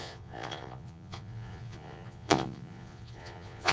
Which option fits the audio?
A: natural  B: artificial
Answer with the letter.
B